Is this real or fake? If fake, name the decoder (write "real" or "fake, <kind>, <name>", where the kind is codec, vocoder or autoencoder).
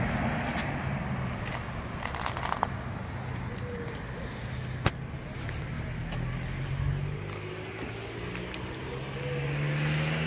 real